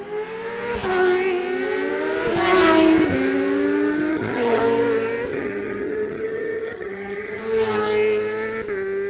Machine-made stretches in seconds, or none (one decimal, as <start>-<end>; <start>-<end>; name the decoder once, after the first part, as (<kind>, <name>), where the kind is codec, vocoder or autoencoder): 4.1-4.6 (vocoder, HiFi-GAN); 5.3-7.4